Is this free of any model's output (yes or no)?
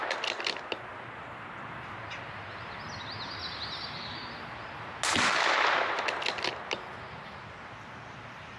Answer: yes